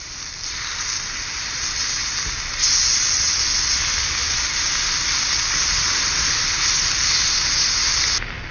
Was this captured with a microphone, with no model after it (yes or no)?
yes